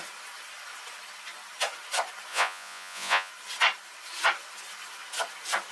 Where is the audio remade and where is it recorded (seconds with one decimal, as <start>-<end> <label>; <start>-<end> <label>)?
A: 0.0-2.3 recorded; 2.3-3.3 remade; 3.3-5.7 recorded